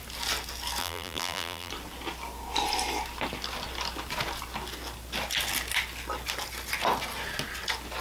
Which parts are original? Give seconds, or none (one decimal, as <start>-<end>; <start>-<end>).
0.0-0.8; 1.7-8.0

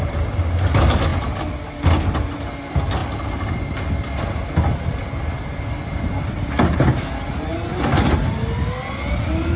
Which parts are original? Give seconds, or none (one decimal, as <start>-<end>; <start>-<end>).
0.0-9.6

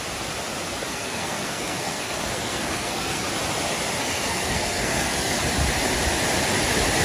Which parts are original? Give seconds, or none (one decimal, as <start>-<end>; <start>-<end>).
0.0-0.9; 3.3-4.0; 5.4-7.0

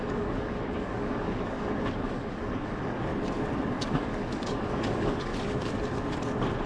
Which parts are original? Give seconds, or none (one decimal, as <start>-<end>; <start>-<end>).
3.1-3.7; 5.3-6.7

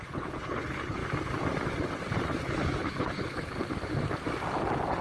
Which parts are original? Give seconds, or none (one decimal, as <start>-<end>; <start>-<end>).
1.0-2.4; 3.5-5.0